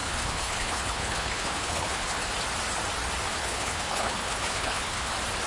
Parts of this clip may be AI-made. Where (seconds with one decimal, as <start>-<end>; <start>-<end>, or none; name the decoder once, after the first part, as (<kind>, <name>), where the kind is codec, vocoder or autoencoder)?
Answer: 0.0-2.3 (codec, HILCodec); 3.4-5.1